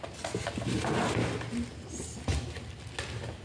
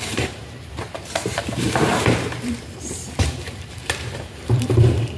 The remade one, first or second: second